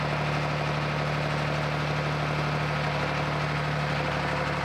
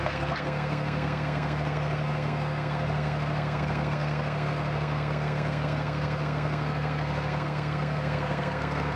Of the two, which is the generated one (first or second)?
second